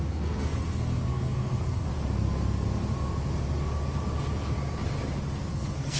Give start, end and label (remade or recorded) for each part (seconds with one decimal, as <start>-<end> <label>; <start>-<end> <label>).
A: 0.0-1.9 remade; 1.9-5.5 recorded; 5.5-6.0 remade

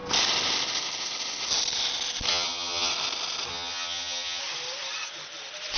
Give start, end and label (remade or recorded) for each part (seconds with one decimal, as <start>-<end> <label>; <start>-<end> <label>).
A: 0.0-2.3 recorded; 2.3-2.9 remade; 2.9-3.5 recorded; 3.5-4.4 remade; 4.4-5.8 recorded

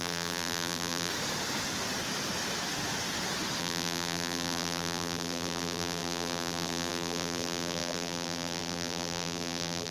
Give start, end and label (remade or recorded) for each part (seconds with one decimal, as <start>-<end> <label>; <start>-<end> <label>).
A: 0.0-1.1 remade; 1.1-3.6 recorded; 3.6-9.9 remade

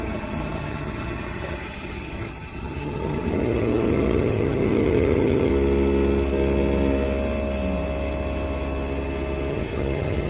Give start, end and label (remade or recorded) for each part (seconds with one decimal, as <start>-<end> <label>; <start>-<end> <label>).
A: 0.0-5.5 remade; 5.5-9.5 recorded; 9.5-10.3 remade

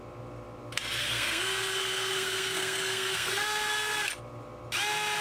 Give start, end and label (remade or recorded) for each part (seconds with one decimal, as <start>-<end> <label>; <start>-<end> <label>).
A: 0.0-1.0 recorded; 1.0-4.1 remade; 4.1-5.2 recorded